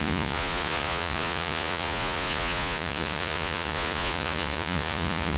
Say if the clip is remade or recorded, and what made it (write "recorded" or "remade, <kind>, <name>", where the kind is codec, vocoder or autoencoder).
remade, vocoder, Vocos